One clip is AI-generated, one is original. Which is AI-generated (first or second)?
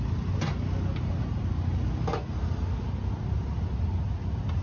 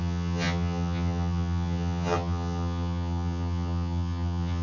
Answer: second